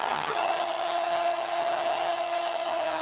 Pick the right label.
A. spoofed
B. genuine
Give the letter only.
A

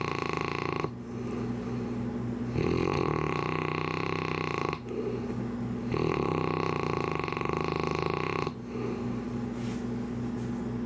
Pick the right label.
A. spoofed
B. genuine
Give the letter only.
B